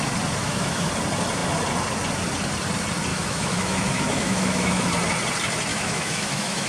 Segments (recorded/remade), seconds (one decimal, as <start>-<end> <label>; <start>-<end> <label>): 0.0-0.4 recorded; 0.4-0.9 remade; 0.9-3.1 recorded; 3.1-4.9 remade; 4.9-5.7 recorded; 5.7-6.7 remade